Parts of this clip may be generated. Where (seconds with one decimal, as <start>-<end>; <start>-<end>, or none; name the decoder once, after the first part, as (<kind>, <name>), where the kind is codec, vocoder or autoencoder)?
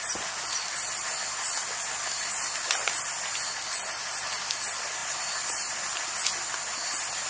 none